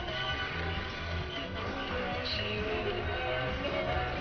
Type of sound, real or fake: real